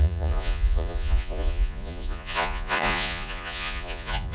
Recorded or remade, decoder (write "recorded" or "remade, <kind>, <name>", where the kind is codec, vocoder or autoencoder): remade, vocoder, Vocos